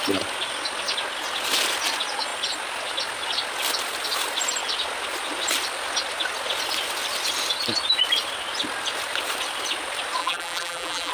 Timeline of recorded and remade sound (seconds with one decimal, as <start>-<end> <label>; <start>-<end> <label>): 0.0-10.2 recorded; 10.2-11.1 remade